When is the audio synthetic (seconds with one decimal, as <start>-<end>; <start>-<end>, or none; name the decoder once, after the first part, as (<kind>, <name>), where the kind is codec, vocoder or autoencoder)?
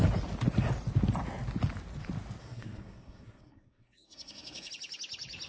2.4-4.7 (codec, SNAC)